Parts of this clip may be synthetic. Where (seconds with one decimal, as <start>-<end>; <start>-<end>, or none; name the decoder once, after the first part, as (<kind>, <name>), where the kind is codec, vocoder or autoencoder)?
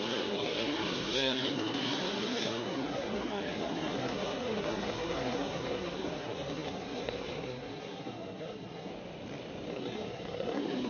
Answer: 0.0-8.9 (codec, SNAC); 9.7-10.9